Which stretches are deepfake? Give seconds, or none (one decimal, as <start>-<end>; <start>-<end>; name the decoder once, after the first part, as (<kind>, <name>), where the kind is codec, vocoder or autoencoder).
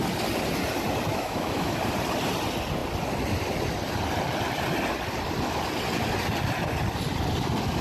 1.1-1.8 (autoencoder, DAC-VAE)